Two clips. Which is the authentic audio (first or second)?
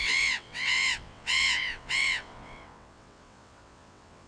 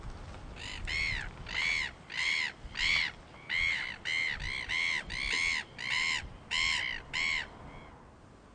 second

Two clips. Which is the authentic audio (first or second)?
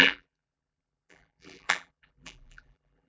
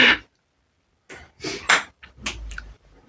second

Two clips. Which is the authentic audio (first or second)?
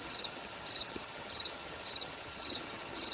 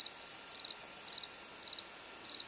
second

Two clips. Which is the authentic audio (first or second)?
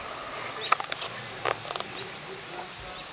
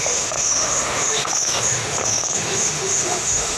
first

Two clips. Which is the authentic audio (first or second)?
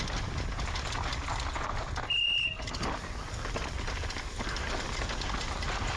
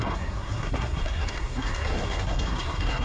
first